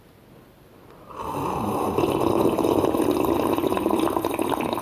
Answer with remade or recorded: recorded